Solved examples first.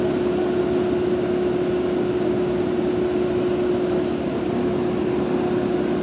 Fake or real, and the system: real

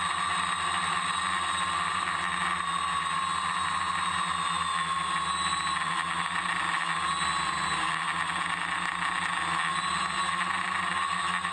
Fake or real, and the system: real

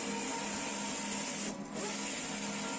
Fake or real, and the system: real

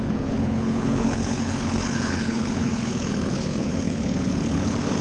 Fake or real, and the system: fake, codec, HILCodec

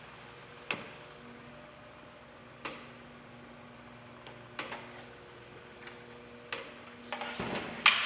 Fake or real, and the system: real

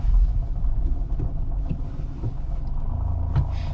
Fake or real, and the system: real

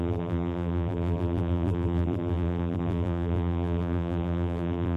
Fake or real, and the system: fake, vocoder, BigVGAN v2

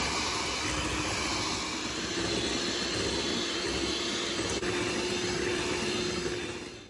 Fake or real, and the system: real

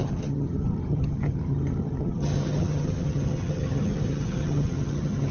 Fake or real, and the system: fake, vocoder, HiFi-GAN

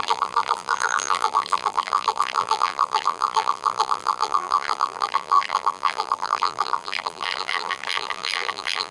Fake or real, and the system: fake, vocoder, BigVGAN v2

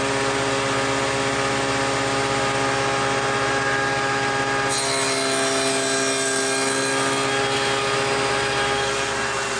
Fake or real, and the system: real